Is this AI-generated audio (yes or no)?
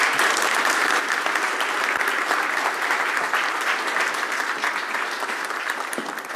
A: no